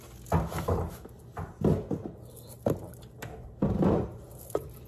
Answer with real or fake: real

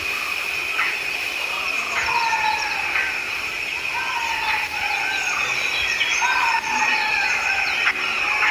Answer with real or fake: real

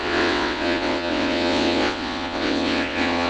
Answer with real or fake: fake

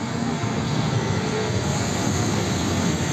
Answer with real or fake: fake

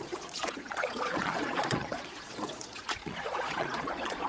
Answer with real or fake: fake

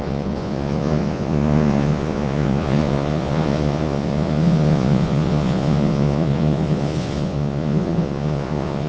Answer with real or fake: fake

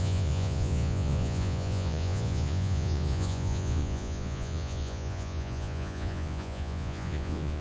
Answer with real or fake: fake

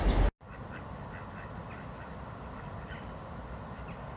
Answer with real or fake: real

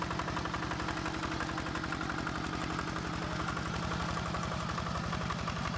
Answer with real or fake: real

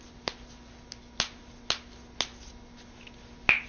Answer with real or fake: real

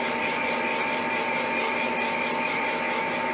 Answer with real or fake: real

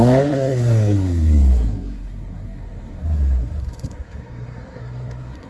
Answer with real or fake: fake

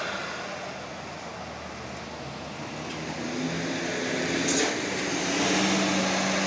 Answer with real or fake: real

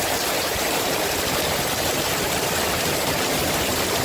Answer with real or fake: fake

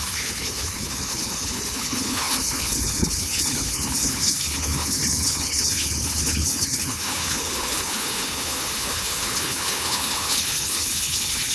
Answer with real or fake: fake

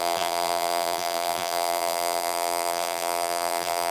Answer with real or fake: fake